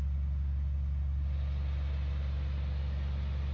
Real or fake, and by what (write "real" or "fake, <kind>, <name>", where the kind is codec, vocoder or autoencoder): real